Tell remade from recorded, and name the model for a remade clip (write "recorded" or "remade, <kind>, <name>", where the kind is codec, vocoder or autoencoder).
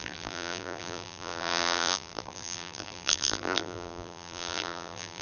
remade, vocoder, BigVGAN v2